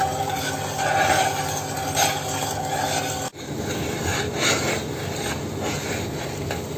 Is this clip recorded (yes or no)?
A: yes